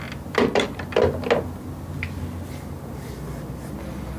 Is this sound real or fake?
real